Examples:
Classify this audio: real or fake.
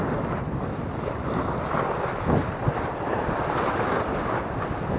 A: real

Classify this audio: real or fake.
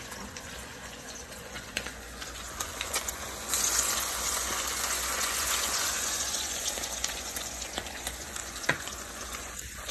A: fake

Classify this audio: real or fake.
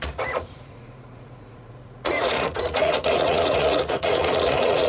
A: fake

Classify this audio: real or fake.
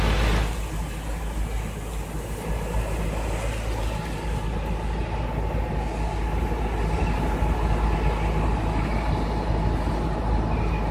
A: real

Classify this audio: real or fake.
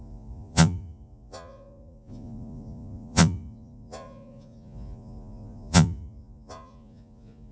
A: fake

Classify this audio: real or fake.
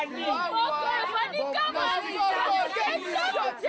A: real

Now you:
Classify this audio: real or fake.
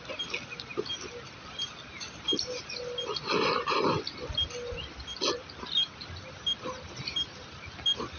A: real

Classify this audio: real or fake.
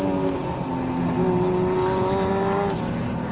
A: real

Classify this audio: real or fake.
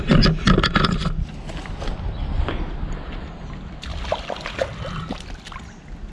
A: real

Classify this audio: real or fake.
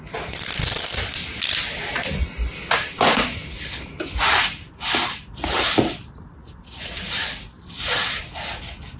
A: real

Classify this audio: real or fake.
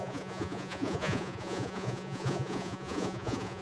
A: fake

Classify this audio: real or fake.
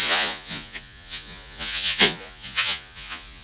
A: fake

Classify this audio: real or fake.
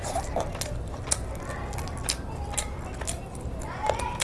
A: real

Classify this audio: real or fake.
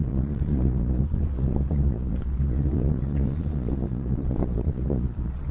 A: fake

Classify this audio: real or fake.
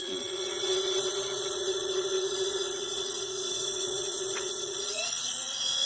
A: fake